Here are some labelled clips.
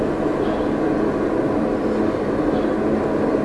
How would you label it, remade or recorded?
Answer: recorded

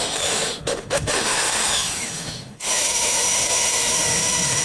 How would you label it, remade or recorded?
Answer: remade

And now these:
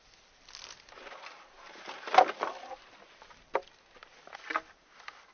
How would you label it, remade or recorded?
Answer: recorded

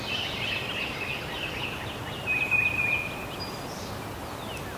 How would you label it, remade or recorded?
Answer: recorded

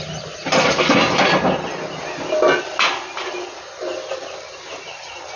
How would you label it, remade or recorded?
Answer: recorded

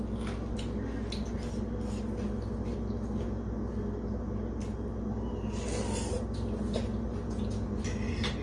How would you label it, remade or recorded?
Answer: recorded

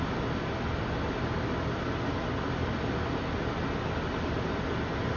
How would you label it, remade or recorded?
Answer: recorded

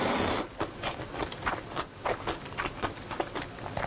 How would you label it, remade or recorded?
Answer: recorded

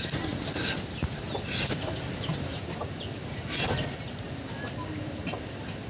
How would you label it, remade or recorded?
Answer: recorded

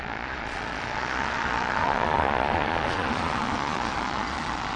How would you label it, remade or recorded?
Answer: remade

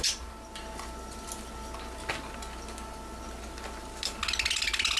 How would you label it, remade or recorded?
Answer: recorded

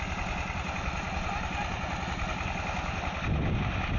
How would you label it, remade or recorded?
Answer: recorded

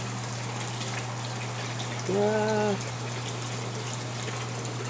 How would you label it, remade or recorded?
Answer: recorded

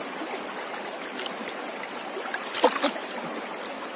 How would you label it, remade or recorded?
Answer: recorded